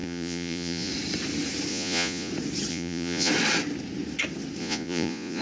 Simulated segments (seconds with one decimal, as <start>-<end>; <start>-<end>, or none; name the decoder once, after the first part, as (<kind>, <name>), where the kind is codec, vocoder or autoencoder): 0.0-0.9 (vocoder, Vocos); 1.7-2.3; 2.7-3.3; 4.6-5.4